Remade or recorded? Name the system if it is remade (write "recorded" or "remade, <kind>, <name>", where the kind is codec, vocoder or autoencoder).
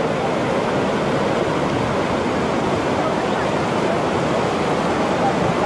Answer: recorded